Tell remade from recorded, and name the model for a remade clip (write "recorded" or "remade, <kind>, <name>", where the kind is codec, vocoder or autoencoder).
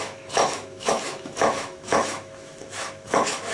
remade, autoencoder, DAC-VAE